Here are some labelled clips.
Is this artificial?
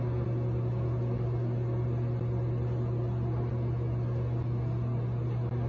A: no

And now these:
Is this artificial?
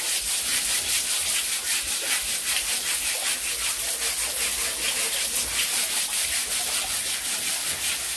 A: no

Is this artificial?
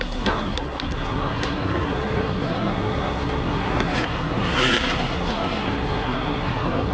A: yes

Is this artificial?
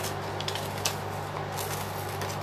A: no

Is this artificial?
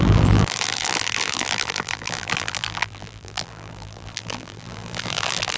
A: yes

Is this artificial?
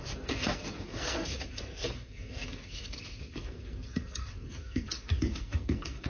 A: yes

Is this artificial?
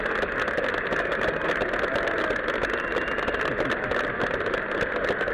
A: no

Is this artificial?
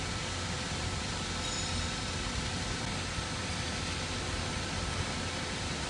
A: no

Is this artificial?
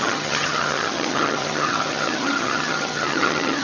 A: yes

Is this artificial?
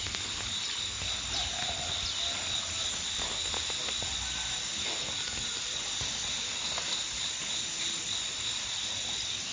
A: no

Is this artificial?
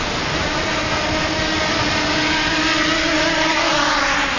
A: no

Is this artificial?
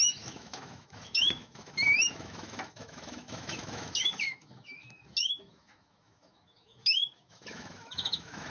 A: yes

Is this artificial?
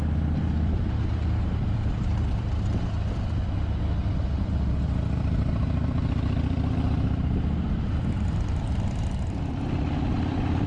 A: yes